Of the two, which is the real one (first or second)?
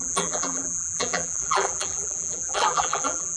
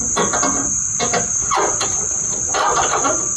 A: second